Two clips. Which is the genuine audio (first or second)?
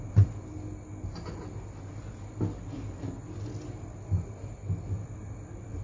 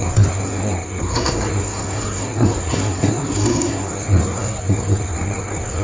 first